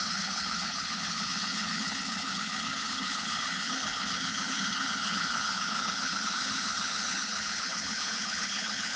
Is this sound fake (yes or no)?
yes